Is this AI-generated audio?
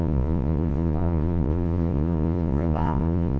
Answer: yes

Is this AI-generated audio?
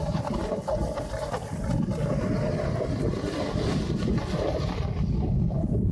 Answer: no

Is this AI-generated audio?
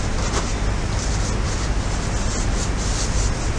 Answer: no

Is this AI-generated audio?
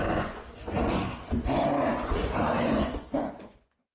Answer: yes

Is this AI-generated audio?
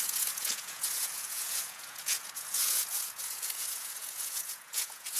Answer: yes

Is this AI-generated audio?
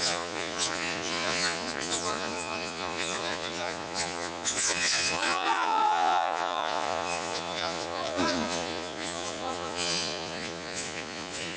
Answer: yes